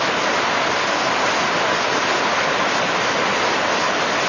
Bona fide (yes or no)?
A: yes